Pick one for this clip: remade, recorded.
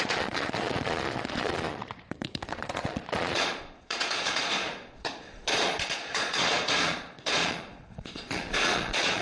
remade